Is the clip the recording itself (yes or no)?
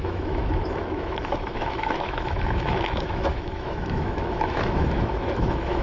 no